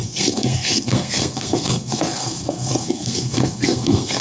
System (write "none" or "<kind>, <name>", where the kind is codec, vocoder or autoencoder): codec, SNAC